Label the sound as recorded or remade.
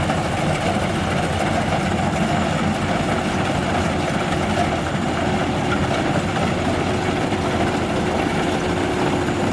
recorded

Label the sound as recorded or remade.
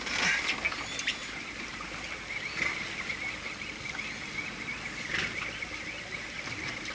recorded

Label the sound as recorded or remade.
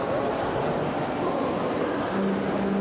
recorded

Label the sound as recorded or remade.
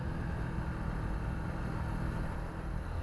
recorded